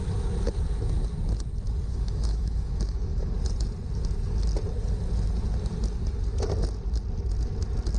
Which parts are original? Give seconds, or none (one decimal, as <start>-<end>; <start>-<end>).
0.0-1.9; 3.3-8.0